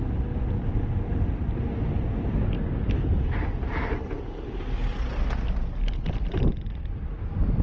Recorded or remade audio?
recorded